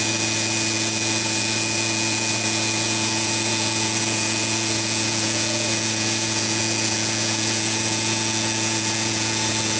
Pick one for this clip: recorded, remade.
remade